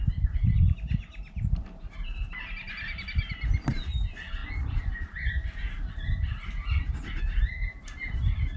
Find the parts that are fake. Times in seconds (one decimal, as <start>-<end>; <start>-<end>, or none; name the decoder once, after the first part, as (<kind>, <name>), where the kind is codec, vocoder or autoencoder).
none